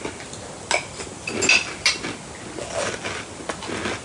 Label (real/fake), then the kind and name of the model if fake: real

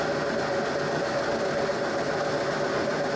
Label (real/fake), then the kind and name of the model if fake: real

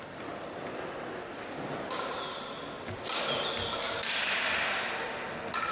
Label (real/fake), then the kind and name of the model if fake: real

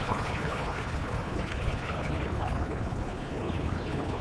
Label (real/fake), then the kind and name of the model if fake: fake, codec, HILCodec